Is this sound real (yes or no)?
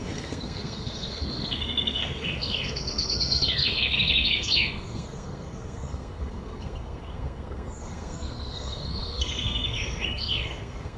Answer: no